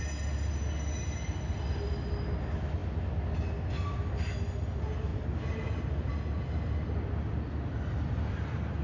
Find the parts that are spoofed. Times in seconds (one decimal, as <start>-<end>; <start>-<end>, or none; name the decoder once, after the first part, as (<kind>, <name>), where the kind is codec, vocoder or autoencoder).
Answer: 5.1-6.1 (vocoder, BigVGAN v2)